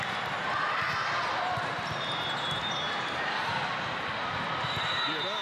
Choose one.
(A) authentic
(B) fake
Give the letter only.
A